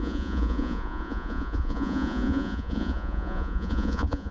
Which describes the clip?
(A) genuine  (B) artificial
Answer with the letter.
B